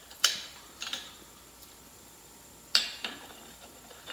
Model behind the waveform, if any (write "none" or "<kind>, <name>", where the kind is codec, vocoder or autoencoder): vocoder, BigVGAN v2